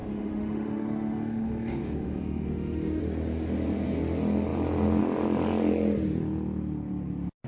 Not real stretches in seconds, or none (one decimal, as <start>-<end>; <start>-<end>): 0.0-3.0

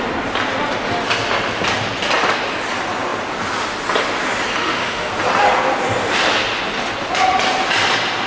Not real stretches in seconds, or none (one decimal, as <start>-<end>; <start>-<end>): 4.6-5.1

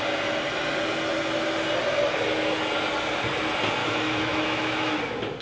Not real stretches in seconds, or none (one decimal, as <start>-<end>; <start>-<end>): 3.8-5.0

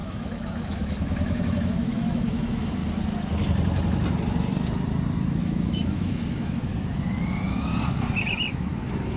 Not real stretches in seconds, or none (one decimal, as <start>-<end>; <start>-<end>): 0.0-2.8; 5.3-6.7; 8.5-9.2

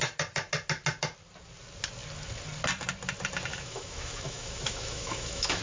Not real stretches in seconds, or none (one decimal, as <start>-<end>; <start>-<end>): 3.5-5.6